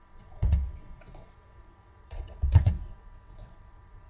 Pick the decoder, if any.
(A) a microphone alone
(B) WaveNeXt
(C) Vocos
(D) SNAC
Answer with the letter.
B